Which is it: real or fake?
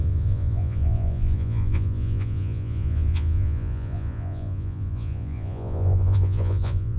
fake